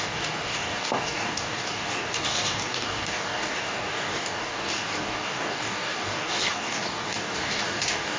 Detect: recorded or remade remade